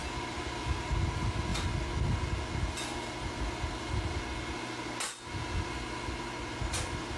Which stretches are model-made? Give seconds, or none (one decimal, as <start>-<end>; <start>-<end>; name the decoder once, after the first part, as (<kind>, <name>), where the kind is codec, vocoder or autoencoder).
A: none